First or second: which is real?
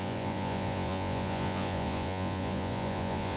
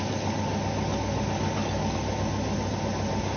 second